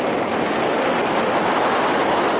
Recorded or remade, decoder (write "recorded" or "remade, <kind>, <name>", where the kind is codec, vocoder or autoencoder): recorded